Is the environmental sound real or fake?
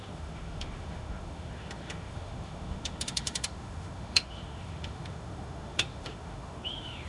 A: fake